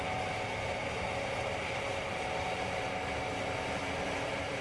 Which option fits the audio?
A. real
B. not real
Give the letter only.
A